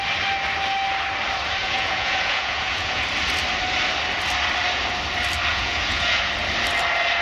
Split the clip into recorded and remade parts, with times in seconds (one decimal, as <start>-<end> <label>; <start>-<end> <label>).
0.0-1.6 recorded; 1.6-3.0 remade; 3.0-5.5 recorded; 5.5-6.3 remade; 6.3-7.2 recorded